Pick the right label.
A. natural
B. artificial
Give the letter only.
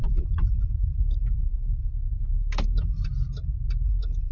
B